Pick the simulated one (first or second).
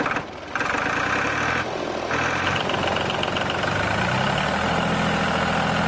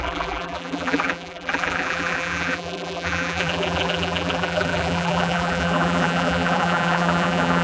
second